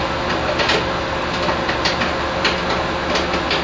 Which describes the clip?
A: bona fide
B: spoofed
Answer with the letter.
A